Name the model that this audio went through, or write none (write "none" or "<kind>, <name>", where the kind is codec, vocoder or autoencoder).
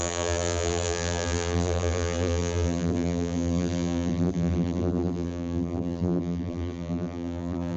vocoder, BigVGAN v2